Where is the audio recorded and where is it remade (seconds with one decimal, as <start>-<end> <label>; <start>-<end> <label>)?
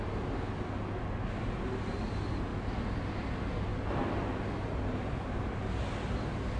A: 0.0-6.6 recorded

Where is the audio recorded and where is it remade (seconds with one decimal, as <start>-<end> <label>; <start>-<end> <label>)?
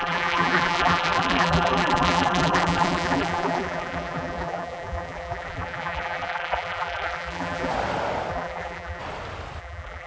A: 0.0-7.7 remade; 7.7-8.3 recorded; 8.3-9.0 remade; 9.0-9.6 recorded; 9.6-10.1 remade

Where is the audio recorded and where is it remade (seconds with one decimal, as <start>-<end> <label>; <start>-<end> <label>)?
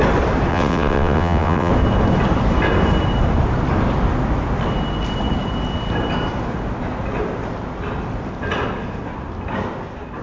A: 0.0-0.5 recorded; 0.5-1.7 remade; 1.7-10.2 recorded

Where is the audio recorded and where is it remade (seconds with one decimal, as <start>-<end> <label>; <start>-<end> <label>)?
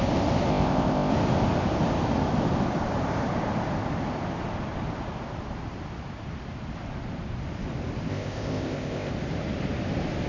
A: 0.0-0.5 recorded; 0.5-1.1 remade; 1.1-8.1 recorded; 8.1-9.1 remade; 9.1-10.3 recorded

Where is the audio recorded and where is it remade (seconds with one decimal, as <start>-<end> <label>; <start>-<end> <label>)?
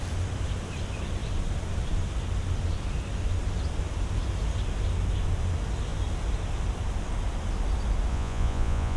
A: 0.0-8.1 recorded; 8.1-9.0 remade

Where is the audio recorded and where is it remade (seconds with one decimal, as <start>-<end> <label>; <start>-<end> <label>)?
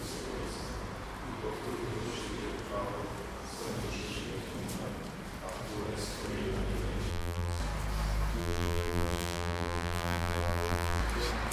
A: 0.0-7.1 recorded; 7.1-7.6 remade; 7.6-8.4 recorded; 8.4-11.0 remade; 11.0-11.5 recorded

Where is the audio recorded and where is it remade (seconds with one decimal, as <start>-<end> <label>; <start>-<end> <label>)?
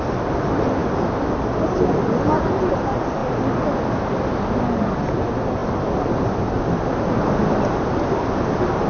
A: 0.0-8.9 recorded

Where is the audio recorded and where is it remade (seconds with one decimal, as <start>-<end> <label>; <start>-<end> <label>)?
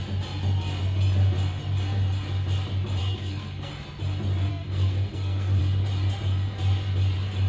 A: 0.0-3.0 recorded; 3.0-3.7 remade; 3.7-4.5 recorded; 4.5-5.6 remade; 5.6-7.5 recorded